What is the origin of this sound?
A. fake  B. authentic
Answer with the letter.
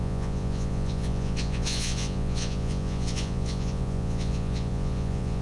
A